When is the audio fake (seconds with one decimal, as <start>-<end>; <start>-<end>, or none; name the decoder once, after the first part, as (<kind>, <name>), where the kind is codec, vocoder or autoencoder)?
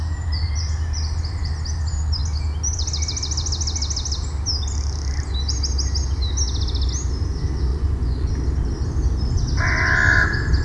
7.7-8.3 (vocoder, Vocos)